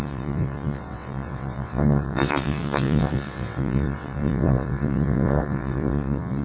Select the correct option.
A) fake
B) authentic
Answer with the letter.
A